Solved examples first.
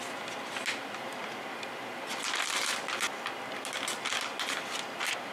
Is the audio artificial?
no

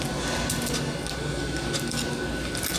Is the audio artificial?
no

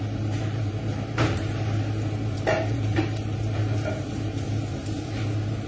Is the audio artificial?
yes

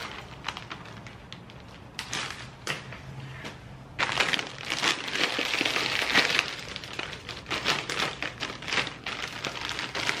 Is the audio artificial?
no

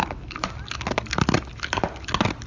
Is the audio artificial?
no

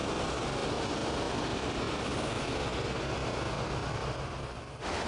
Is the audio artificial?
no